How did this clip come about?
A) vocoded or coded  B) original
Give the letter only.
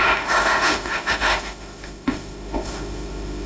A